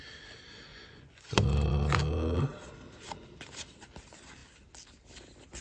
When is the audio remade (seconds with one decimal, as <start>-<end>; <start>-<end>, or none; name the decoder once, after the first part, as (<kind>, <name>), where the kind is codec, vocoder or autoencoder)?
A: 0.7-2.0 (vocoder, Vocos)